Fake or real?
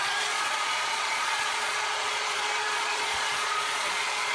fake